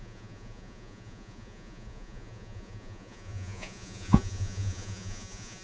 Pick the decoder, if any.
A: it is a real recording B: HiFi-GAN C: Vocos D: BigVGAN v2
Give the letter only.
C